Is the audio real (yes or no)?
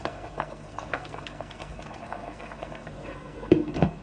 no